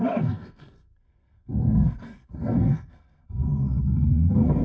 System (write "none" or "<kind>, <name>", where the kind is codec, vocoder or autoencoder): codec, SNAC